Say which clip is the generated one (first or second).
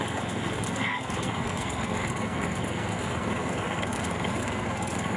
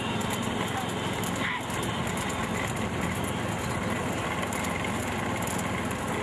first